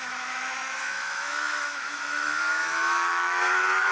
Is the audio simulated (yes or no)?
yes